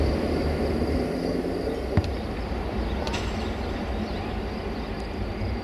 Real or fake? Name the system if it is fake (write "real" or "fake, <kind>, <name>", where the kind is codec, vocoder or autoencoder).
real